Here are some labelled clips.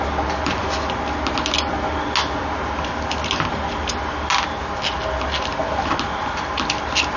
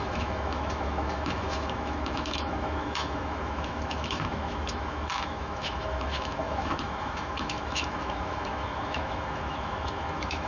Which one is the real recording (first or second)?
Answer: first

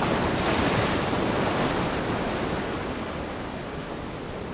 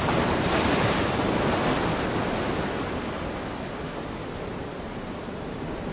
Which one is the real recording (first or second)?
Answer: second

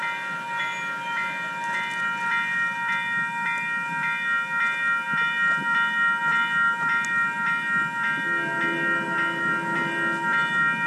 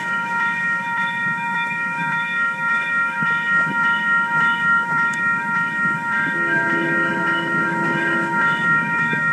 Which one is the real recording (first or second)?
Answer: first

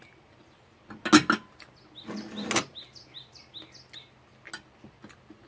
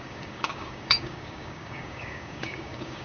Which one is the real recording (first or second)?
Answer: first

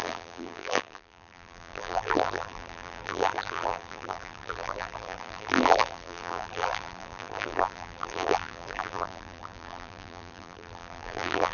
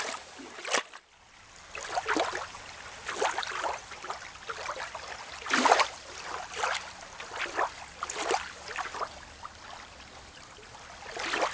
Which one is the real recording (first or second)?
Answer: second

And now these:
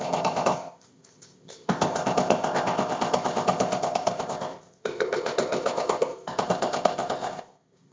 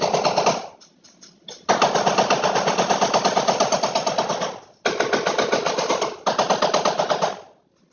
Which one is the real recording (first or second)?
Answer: second